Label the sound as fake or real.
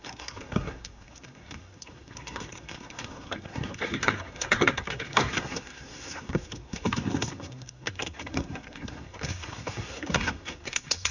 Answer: fake